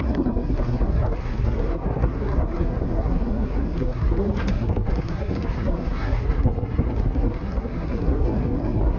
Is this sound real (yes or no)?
no